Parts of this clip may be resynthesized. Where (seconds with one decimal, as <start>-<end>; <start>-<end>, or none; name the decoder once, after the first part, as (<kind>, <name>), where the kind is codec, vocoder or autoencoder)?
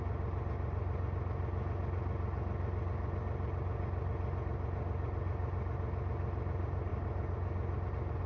none